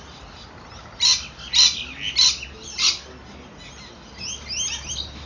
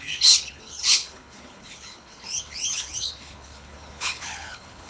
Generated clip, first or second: second